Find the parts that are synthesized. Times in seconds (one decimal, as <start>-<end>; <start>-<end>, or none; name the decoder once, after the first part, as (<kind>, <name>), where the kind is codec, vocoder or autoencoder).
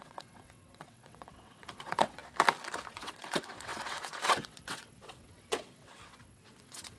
0.0-2.2 (vocoder, WaveNeXt); 2.9-7.0